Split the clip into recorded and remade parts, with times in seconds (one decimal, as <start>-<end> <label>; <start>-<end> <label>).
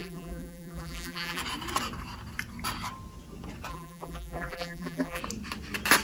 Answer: 0.0-1.4 remade; 1.4-3.7 recorded; 3.7-5.2 remade; 5.2-6.0 recorded